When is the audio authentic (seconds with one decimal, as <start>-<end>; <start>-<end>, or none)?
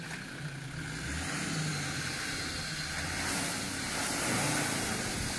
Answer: 0.0-5.4